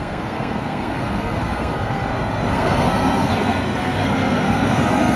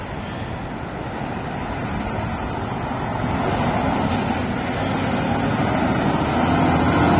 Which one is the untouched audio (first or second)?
second